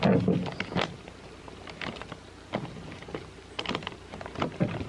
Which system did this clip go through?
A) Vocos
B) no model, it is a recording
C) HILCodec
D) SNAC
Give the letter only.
B